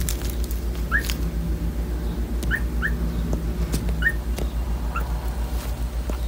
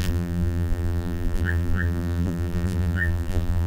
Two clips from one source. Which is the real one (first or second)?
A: first